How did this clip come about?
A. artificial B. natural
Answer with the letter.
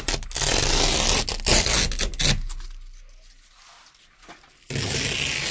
B